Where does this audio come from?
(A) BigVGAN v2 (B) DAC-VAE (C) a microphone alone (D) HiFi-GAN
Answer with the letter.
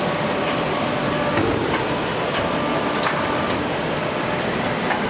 C